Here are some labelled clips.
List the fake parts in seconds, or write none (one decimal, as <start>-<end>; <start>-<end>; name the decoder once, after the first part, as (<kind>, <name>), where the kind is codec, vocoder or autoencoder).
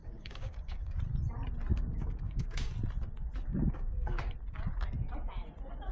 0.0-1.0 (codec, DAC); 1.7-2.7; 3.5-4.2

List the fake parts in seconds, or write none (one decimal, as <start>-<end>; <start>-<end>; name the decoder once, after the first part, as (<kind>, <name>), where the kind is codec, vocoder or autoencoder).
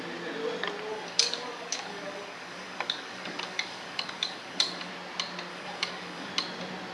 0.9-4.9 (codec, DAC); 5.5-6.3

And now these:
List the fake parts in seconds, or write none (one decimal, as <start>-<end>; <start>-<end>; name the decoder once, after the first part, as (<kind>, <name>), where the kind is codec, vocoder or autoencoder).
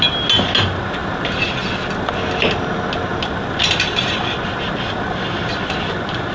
none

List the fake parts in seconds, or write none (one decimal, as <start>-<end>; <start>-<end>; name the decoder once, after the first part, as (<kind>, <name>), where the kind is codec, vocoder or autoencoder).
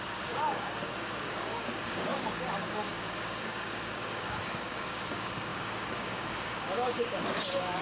0.0-7.8 (codec, DAC)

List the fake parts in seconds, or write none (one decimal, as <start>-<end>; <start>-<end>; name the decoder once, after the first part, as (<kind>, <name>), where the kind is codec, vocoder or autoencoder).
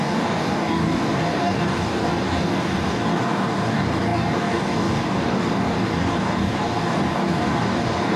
0.0-8.2 (codec, DAC)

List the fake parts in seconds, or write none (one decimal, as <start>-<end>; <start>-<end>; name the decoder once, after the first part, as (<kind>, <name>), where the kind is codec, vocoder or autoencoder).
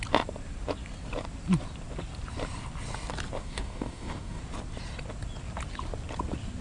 3.4-4.4 (codec, DAC)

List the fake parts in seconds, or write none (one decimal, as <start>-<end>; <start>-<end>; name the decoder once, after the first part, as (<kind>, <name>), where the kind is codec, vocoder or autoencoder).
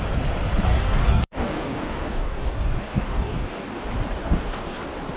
0.7-3.8 (codec, DAC); 4.2-4.8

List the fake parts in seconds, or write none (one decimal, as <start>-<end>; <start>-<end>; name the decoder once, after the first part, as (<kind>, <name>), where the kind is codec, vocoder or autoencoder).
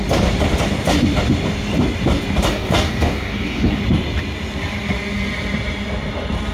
2.5-3.8 (codec, DAC)